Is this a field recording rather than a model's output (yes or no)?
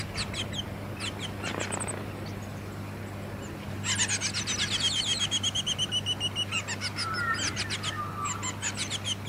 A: yes